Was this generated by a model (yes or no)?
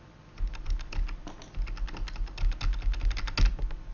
no